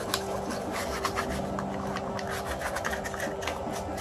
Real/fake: real